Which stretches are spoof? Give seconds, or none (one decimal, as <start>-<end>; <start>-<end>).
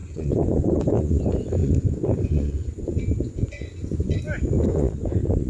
0.0-1.2; 1.6-4.2; 4.7-5.5